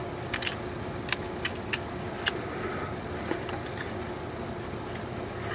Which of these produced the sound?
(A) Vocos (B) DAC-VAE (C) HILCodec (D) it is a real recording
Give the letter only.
D